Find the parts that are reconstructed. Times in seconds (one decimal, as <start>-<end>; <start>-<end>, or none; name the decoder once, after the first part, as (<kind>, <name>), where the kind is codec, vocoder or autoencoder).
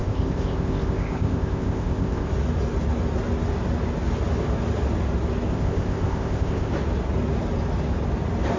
0.0-2.3 (codec, ZipCodec); 5.5-6.7